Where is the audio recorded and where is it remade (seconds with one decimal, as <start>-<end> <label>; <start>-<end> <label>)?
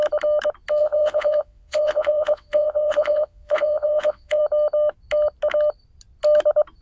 0.0-0.8 recorded; 0.8-4.4 remade; 4.4-6.8 recorded